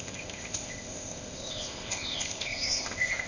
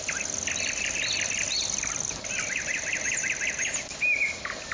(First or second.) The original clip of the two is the second